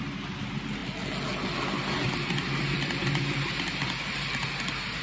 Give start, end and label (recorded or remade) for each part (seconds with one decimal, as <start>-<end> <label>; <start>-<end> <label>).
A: 0.0-5.0 recorded